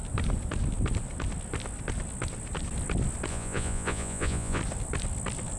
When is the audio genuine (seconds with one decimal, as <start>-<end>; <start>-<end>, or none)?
0.0-3.3; 4.6-5.6